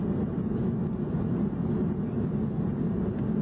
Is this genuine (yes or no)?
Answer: yes